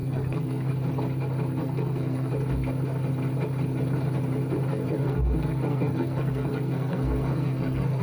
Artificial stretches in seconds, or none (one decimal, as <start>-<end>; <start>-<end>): 0.0-0.7; 1.6-2.3; 4.7-8.0